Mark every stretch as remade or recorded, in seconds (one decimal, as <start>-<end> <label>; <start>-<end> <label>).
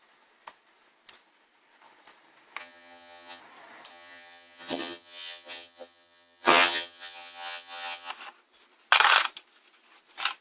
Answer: 0.0-2.6 recorded; 2.6-3.4 remade; 3.4-3.9 recorded; 3.9-8.1 remade; 8.1-10.4 recorded